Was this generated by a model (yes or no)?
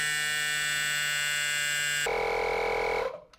no